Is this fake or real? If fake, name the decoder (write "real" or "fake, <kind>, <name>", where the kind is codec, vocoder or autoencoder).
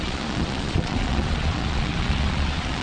fake, vocoder, Vocos